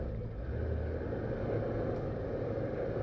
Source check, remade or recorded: recorded